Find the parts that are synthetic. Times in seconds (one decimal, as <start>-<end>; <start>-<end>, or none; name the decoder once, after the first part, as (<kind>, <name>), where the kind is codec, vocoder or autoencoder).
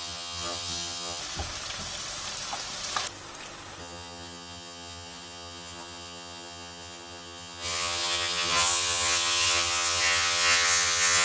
0.0-1.2 (vocoder, HiFi-GAN); 3.8-11.2